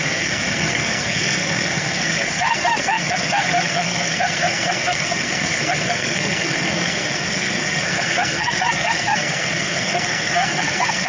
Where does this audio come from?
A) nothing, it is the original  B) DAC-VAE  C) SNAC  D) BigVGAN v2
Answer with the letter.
C